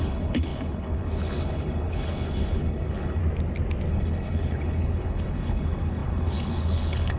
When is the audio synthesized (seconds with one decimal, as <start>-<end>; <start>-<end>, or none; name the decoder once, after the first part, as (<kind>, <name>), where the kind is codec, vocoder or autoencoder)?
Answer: 0.0-3.2 (codec, HILCodec); 3.9-7.2